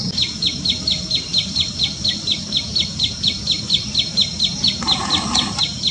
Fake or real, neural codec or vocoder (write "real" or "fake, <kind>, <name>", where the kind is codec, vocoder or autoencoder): real